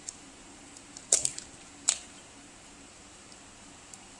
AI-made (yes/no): yes